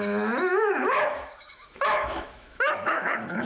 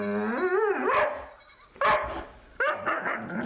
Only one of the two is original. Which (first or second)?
second